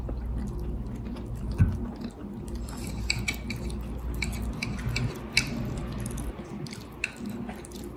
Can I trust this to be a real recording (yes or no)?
yes